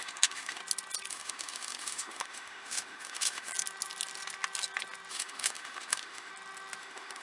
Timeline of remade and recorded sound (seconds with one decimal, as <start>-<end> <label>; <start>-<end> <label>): 0.0-0.6 remade; 0.6-1.1 recorded; 1.1-3.5 remade; 3.5-5.1 recorded; 5.1-6.3 remade; 6.3-6.8 recorded; 6.8-7.2 remade